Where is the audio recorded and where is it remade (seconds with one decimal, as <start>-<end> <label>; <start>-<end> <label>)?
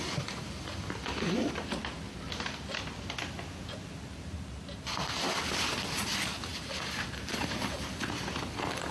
0.0-6.5 recorded; 6.5-8.0 remade; 8.0-8.9 recorded